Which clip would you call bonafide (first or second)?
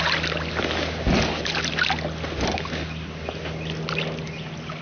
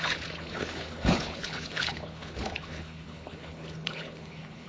first